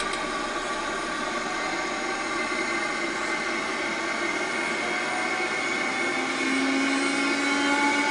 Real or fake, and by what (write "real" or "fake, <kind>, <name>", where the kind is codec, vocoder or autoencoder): real